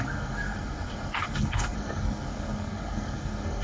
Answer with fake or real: fake